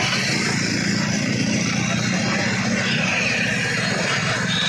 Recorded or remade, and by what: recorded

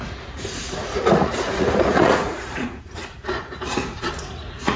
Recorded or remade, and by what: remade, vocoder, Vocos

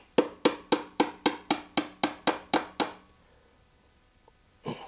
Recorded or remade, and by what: recorded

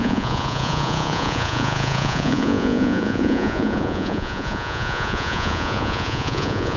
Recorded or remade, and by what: remade, vocoder, Vocos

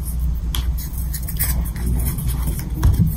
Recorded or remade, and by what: recorded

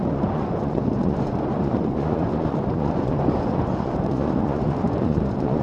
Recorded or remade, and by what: remade, vocoder, Vocos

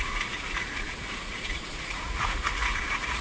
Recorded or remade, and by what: remade, vocoder, Vocos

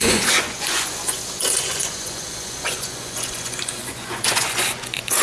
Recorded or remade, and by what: remade, vocoder, Vocos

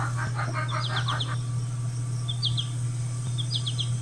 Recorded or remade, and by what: recorded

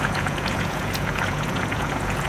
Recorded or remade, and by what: remade, vocoder, Vocos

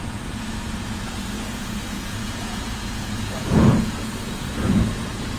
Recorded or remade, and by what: remade, vocoder, Vocos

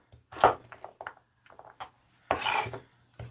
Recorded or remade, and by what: recorded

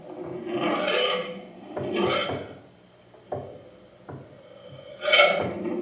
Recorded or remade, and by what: recorded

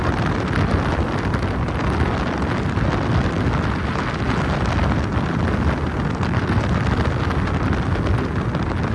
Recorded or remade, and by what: recorded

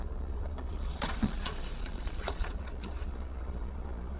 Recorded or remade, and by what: remade, vocoder, Vocos